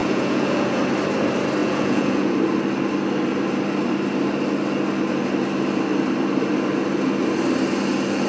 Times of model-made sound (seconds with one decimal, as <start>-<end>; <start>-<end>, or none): 0.0-0.8; 1.6-2.3